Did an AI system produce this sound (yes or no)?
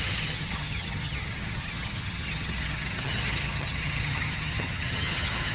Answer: yes